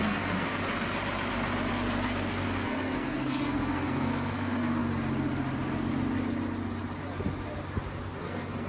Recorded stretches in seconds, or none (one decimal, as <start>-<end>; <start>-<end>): 0.6-1.7; 4.8-8.2